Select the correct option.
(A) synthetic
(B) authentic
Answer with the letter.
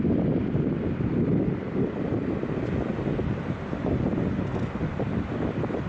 B